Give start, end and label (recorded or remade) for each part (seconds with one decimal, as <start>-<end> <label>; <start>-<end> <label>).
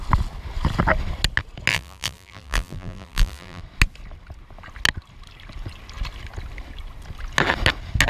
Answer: 0.0-1.7 recorded; 1.7-3.6 remade; 3.6-8.1 recorded